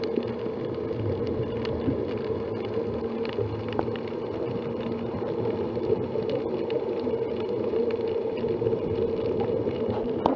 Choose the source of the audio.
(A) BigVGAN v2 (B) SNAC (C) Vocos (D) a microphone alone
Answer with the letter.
D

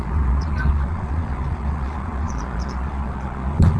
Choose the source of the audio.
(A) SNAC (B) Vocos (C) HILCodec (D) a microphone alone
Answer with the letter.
B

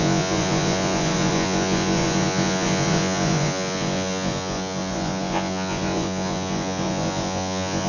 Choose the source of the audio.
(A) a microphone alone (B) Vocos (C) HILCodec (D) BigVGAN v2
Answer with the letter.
B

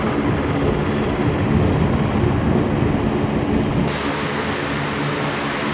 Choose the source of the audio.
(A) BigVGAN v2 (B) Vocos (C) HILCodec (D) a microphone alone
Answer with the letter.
D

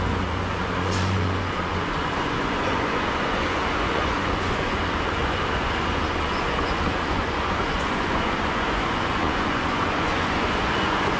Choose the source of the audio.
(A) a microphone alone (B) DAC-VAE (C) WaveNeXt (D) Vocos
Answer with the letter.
D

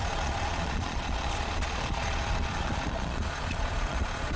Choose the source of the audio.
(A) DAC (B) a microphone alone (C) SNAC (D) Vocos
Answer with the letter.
D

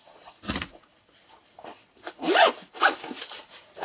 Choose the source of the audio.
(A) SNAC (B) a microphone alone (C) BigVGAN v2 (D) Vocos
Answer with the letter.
D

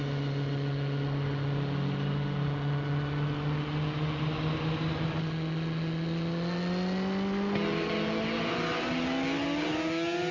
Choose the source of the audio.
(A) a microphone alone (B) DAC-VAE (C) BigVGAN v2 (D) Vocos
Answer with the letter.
A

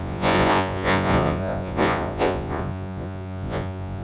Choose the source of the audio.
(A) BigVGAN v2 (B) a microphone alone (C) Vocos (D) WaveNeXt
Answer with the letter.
C